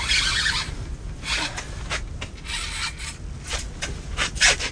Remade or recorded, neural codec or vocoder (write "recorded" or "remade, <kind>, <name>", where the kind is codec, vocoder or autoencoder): recorded